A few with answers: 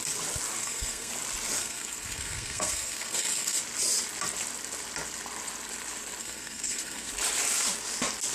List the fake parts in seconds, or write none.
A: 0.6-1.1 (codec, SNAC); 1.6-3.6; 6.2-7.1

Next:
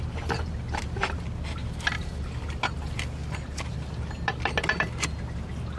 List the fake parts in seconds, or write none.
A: none

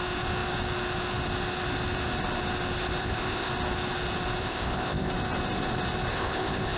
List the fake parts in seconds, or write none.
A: 3.0-3.5 (codec, ZipCodec); 4.4-5.1; 6.1-6.8

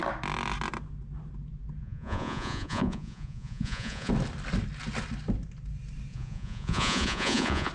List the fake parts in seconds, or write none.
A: 1.8-4.1 (vocoder, Vocos); 6.1-7.7